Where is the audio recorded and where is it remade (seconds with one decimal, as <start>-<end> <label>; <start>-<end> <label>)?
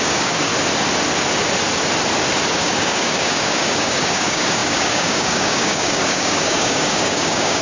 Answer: 0.0-0.5 remade; 0.5-2.5 recorded; 2.5-7.6 remade